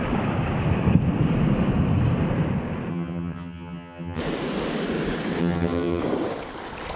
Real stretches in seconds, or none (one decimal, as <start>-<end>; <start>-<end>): 0.0-2.9; 4.2-5.4; 6.0-7.0